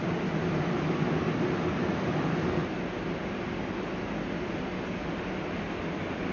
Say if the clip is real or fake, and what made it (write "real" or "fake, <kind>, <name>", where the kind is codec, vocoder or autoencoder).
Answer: real